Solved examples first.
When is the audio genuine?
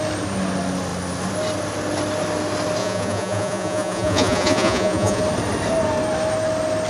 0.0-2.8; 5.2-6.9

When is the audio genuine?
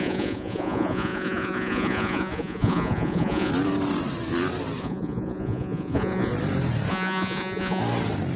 3.5-4.8; 6.3-6.9; 7.8-8.4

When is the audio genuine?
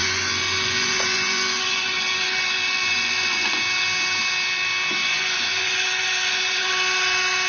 3.6-5.0; 6.7-7.5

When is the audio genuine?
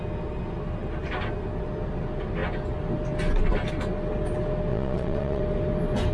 0.0-4.7; 5.4-6.1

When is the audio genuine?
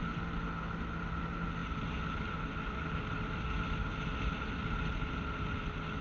0.0-6.0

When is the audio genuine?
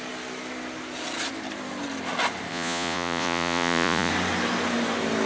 0.0-2.5; 4.1-5.3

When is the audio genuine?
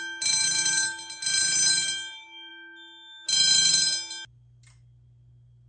0.0-5.7